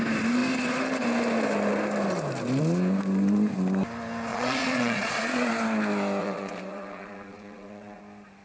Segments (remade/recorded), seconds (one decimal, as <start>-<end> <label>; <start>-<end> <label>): 0.0-4.3 recorded; 4.3-5.5 remade; 5.5-6.2 recorded; 6.2-8.0 remade; 8.0-8.4 recorded